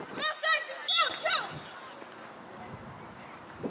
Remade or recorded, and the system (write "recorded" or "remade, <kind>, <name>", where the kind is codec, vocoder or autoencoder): recorded